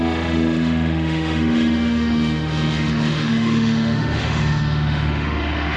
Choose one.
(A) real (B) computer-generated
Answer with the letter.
B